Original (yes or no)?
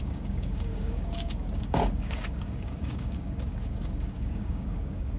no